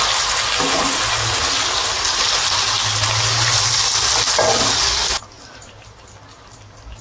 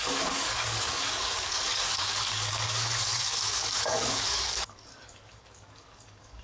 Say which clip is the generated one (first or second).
second